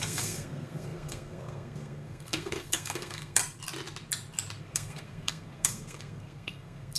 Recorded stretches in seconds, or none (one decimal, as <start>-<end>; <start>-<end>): 3.4-4.6